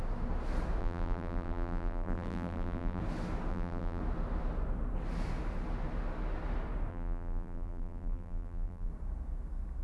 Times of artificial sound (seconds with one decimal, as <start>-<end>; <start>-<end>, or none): 0.8-3.0; 3.5-4.0; 6.9-8.9